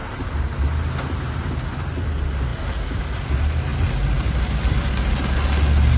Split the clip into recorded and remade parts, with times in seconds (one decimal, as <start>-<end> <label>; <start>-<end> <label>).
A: 0.0-6.0 recorded